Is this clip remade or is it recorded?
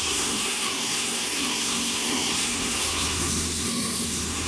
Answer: remade